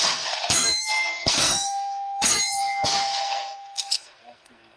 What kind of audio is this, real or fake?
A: fake